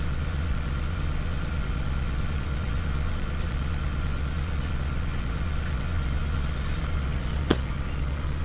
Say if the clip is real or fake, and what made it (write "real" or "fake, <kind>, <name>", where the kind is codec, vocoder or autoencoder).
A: fake, vocoder, Vocos